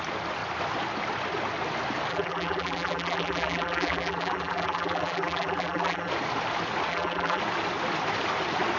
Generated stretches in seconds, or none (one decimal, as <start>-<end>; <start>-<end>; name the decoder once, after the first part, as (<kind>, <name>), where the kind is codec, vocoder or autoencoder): 2.1-6.1 (vocoder, BigVGAN v2); 6.9-7.4